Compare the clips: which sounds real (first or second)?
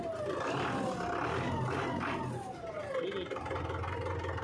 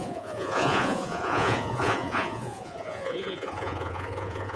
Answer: first